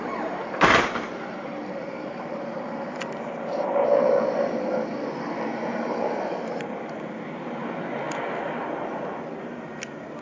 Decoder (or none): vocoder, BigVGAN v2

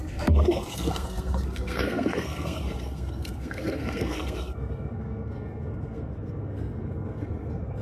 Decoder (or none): codec, SNAC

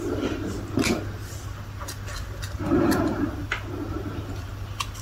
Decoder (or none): none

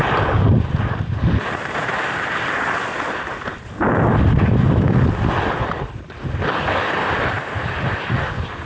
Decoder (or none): none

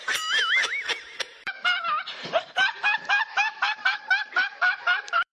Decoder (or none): vocoder, BigVGAN v2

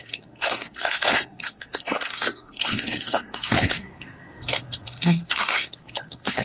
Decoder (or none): codec, SNAC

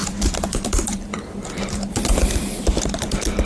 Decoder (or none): vocoder, BigVGAN v2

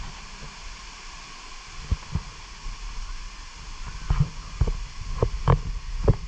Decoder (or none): none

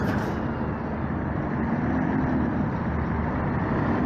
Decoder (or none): none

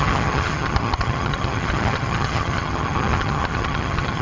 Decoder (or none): vocoder, HiFi-GAN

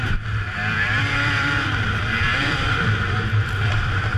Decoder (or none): vocoder, BigVGAN v2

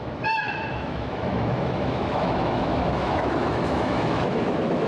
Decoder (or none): autoencoder, DAC-VAE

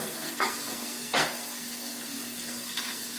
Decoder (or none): codec, SNAC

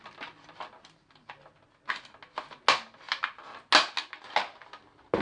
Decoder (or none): none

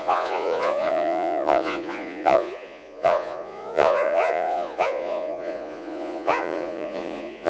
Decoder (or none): vocoder, Vocos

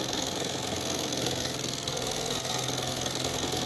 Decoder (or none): codec, SNAC